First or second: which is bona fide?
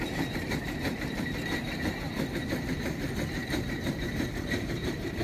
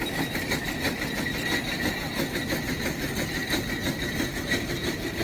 second